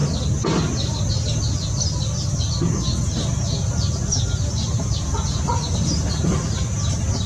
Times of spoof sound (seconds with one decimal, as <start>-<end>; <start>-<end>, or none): none